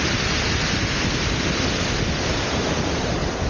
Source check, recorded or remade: recorded